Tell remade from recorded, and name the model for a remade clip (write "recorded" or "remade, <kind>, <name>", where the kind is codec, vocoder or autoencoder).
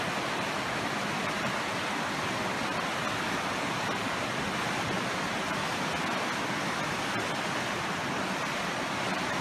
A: recorded